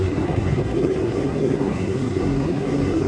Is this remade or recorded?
remade